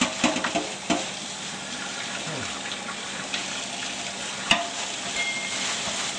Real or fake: real